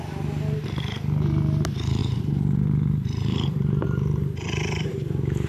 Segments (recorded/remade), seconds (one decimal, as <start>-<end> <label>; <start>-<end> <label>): 0.0-2.0 recorded; 2.0-5.5 remade